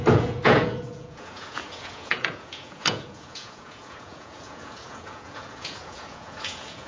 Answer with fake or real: fake